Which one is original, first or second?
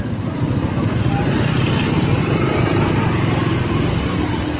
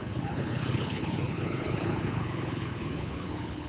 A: first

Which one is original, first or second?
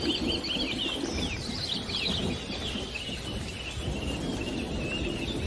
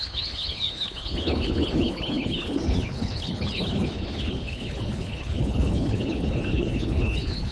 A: first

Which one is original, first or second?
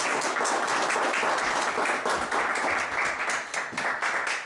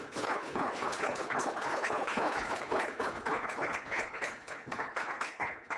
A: first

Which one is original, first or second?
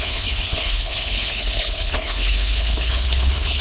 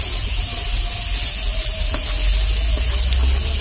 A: second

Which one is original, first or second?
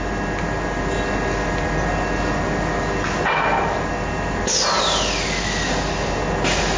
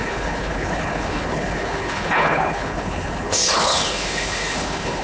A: first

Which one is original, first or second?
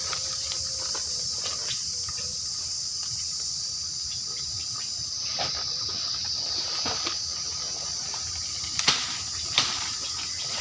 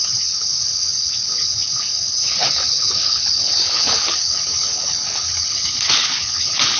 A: first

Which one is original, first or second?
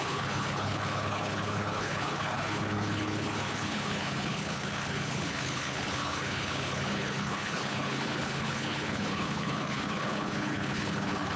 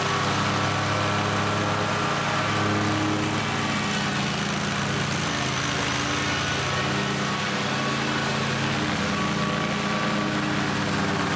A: second